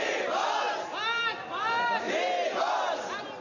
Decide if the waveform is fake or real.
real